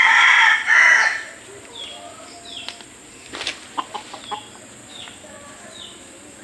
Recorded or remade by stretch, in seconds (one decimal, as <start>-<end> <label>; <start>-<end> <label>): 0.0-6.4 recorded